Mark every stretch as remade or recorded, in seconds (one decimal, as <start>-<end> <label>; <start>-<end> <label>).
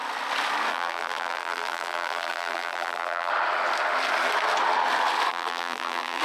0.0-0.7 recorded; 0.7-3.3 remade; 3.3-5.3 recorded; 5.3-6.2 remade